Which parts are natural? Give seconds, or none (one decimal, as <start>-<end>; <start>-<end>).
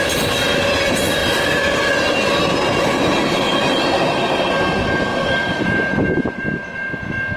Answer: 0.0-1.2; 1.9-5.1; 6.4-7.4